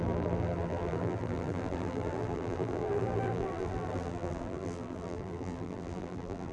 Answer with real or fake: fake